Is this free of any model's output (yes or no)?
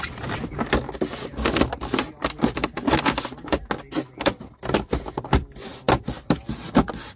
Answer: yes